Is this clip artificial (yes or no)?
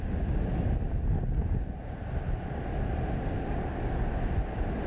no